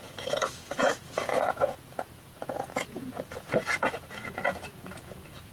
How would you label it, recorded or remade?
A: remade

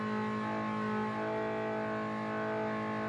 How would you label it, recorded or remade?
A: recorded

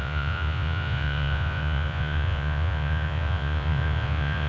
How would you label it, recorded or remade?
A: remade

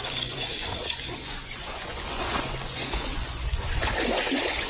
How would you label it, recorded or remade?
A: remade